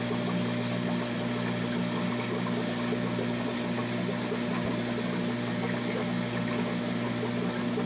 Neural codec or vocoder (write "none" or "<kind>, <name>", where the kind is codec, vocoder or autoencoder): none